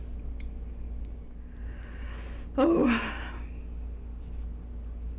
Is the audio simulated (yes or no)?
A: no